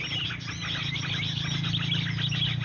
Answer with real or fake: real